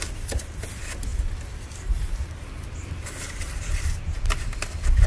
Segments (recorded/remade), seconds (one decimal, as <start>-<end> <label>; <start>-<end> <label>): 0.0-5.1 recorded

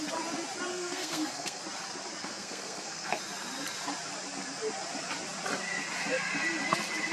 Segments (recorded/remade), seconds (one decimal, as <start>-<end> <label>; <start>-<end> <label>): 0.0-0.7 recorded; 0.7-1.6 remade; 1.6-2.2 recorded; 2.2-3.2 remade; 3.2-7.1 recorded